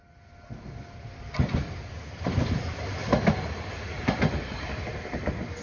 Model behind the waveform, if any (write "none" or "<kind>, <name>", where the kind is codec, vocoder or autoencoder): none